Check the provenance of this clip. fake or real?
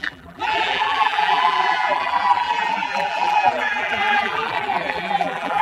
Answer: fake